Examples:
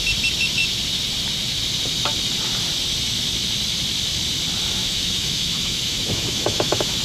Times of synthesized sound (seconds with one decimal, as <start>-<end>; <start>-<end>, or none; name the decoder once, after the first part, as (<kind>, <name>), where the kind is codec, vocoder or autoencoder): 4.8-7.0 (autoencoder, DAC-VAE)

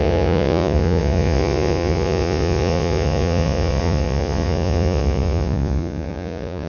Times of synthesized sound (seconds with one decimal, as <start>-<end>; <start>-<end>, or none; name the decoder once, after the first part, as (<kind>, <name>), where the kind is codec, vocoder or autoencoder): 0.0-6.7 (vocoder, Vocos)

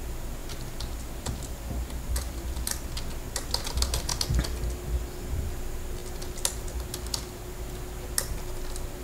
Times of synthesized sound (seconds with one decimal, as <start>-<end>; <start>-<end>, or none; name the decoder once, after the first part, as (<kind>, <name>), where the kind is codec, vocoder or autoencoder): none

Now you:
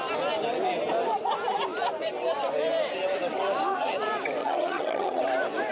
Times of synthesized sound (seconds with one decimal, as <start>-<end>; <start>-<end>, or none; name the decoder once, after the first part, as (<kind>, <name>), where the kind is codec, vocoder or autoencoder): 4.4-5.2 (vocoder, HiFi-GAN)

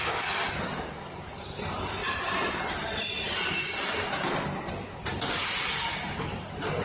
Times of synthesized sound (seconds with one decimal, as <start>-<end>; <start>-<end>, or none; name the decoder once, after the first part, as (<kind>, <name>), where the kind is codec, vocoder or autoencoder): 2.0-4.4 (vocoder, BigVGAN v2)